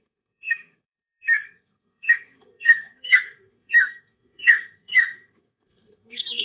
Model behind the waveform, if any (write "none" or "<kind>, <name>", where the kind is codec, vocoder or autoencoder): codec, SNAC